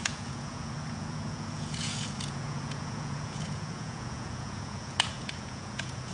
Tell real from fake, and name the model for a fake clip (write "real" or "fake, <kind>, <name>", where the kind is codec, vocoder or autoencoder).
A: fake, vocoder, Vocos